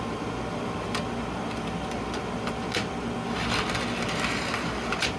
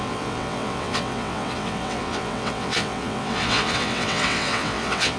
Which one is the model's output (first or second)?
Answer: second